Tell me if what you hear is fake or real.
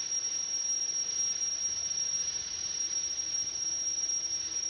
fake